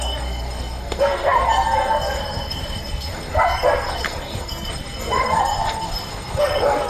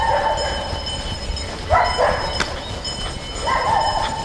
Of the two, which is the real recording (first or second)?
second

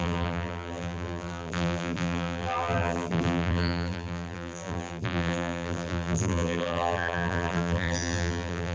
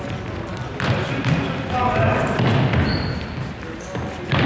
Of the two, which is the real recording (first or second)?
second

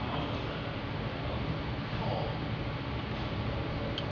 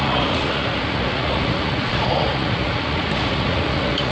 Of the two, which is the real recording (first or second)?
first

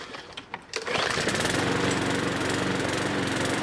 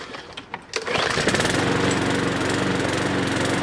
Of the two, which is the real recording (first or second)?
second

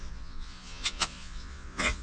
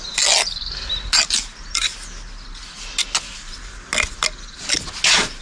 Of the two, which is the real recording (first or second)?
second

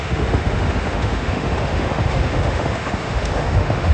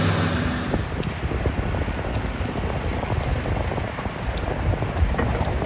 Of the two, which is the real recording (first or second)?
second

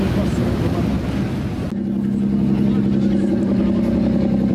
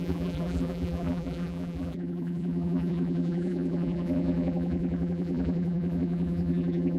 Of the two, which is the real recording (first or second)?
first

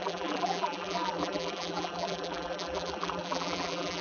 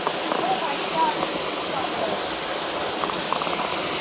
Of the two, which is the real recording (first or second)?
second